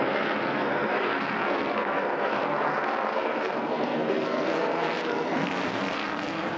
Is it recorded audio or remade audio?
remade